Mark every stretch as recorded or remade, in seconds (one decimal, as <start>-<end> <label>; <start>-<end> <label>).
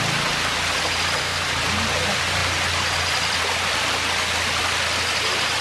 0.0-5.6 recorded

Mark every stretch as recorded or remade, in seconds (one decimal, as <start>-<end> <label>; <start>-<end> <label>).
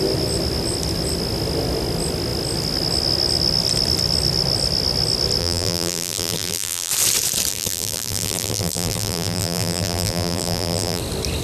0.0-5.4 recorded; 5.4-6.9 remade; 6.9-7.5 recorded; 7.5-11.0 remade; 11.0-11.4 recorded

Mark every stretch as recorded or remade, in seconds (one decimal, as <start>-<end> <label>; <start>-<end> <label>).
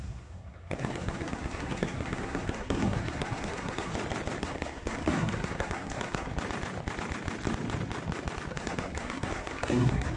0.0-3.9 remade; 3.9-4.4 recorded; 4.4-6.3 remade; 6.3-8.5 recorded; 8.5-10.2 remade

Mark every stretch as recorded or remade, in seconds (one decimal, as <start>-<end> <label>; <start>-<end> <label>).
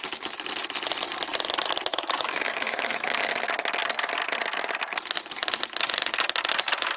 0.0-1.9 recorded; 1.9-3.3 remade; 3.3-7.0 recorded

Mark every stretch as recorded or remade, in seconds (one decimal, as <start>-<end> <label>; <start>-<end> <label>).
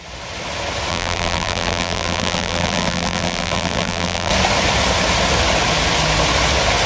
0.0-0.9 recorded; 0.9-4.3 remade; 4.3-6.9 recorded